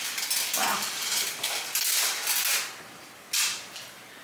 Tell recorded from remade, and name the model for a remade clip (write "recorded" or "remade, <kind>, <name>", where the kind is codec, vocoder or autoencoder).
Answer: recorded